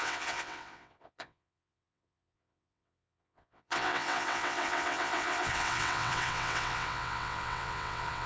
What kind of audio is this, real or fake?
fake